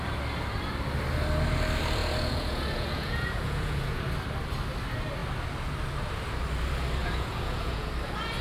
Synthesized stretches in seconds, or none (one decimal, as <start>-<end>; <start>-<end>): 2.0-4.0; 7.0-7.9